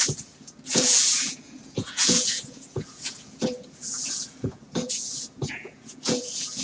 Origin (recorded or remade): remade